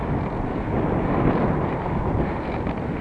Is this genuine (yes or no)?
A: yes